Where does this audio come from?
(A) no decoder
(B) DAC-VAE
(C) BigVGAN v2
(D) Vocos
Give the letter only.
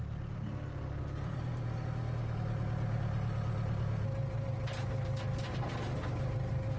A